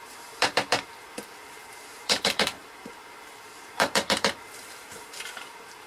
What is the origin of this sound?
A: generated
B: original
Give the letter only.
A